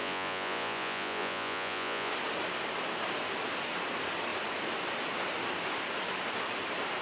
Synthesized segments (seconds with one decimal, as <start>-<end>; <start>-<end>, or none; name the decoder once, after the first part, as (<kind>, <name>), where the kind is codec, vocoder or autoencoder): 0.0-2.1 (vocoder, Vocos)